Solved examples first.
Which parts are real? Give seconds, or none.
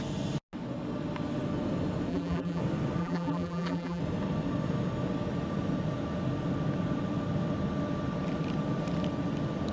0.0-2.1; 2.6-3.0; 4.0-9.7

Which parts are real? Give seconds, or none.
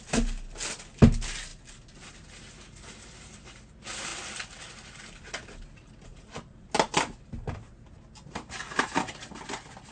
0.0-6.1; 6.7-9.9